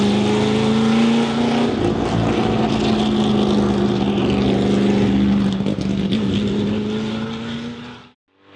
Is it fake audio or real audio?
real